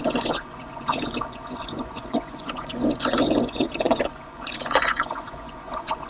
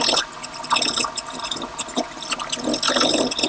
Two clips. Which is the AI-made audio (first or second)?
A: first